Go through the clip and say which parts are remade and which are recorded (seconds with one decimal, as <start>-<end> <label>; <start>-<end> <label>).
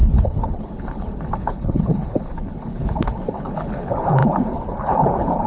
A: 0.0-5.5 remade